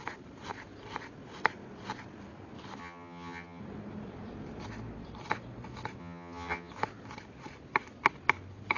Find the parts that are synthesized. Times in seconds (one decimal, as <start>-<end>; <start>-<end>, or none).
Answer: 2.8-3.6; 6.0-6.7